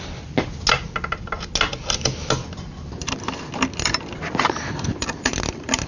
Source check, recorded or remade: recorded